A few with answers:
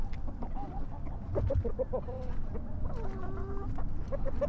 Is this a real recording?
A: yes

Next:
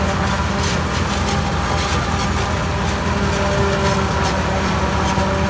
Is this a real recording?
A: yes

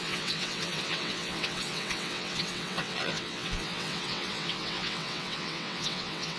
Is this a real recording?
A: no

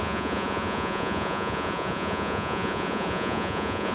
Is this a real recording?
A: no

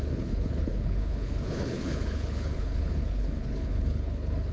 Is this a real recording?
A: no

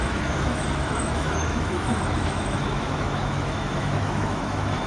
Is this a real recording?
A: no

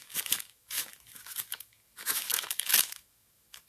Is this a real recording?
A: no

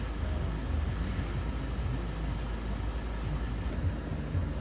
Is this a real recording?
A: yes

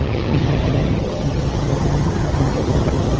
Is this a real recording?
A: no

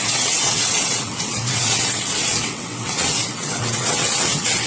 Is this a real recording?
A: no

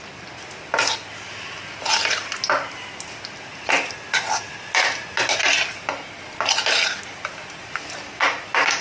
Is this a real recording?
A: yes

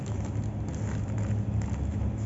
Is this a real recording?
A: yes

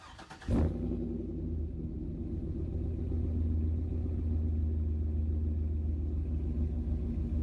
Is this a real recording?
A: yes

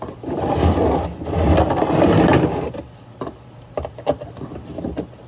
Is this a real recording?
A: yes